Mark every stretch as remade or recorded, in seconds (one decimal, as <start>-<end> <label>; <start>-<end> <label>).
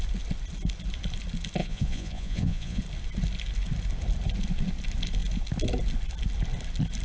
0.0-1.6 recorded; 1.6-2.8 remade; 2.8-7.0 recorded